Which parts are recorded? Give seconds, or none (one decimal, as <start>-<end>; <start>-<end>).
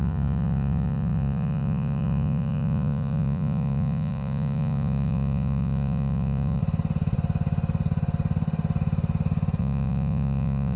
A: 6.6-9.6